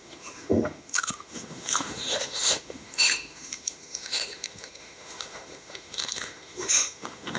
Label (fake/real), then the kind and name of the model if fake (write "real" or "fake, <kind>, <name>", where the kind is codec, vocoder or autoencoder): fake, autoencoder, DAC-VAE